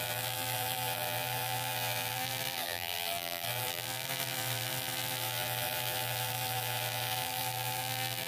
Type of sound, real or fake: fake